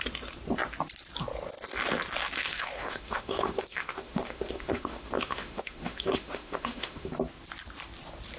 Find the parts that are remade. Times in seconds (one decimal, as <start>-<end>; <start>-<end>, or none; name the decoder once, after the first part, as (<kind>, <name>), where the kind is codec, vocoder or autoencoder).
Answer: 2.5-7.1 (autoencoder, DAC-VAE)